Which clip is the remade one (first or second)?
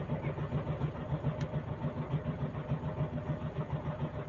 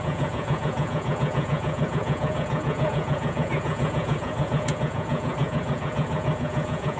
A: second